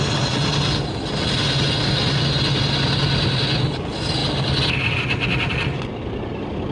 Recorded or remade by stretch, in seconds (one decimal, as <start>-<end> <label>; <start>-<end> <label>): 0.0-6.7 recorded